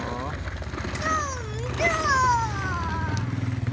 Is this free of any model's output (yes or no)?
yes